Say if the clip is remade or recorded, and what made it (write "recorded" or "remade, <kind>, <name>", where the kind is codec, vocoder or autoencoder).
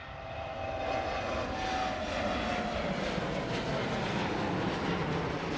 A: recorded